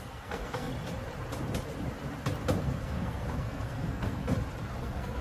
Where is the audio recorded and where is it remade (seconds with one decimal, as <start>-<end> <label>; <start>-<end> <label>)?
0.0-0.7 remade; 0.7-2.6 recorded; 2.6-4.2 remade; 4.2-4.8 recorded; 4.8-5.2 remade